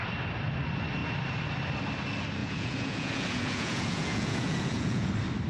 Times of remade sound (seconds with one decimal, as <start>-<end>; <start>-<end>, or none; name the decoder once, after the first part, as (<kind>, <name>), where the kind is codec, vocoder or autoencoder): 2.4-5.1 (vocoder, Vocos)